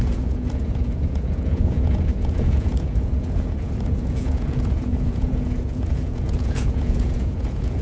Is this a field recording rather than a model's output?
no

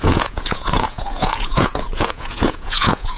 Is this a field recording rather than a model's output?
no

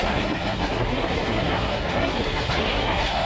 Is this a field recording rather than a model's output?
no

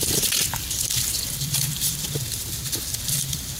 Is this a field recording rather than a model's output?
no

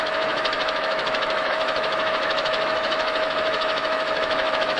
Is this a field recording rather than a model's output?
no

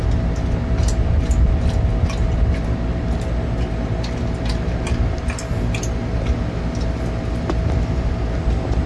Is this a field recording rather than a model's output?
yes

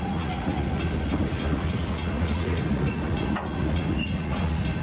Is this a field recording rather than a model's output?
no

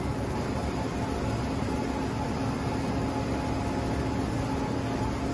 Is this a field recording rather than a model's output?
yes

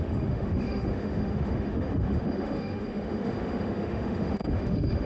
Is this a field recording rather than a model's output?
no